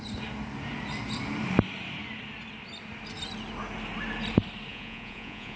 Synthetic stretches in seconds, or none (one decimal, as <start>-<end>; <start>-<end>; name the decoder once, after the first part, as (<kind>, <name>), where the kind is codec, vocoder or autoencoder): 4.7-5.6 (vocoder, Vocos)